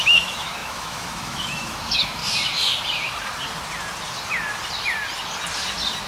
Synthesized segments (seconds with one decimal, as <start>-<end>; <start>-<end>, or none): 0.0-2.2